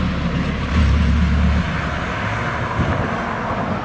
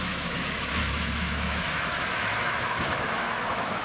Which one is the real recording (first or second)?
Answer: first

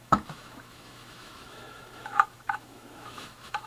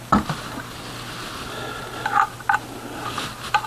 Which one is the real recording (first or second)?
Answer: second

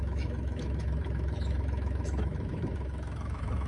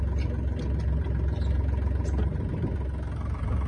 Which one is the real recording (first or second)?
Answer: second